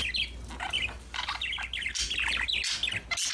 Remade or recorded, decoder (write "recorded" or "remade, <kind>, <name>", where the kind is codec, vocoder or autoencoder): recorded